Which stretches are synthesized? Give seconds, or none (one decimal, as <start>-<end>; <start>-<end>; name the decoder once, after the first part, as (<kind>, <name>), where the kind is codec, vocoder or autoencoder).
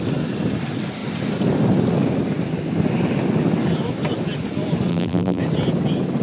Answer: 4.9-5.4 (vocoder, BigVGAN v2)